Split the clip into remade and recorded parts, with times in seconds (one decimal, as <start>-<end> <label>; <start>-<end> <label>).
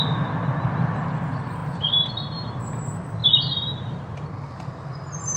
0.0-1.6 recorded; 1.6-2.6 remade; 2.6-5.4 recorded